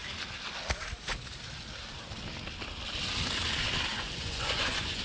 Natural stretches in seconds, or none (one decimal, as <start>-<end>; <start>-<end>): 0.0-3.9